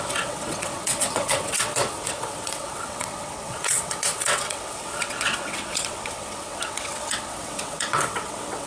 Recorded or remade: remade